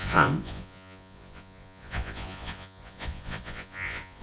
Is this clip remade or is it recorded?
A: remade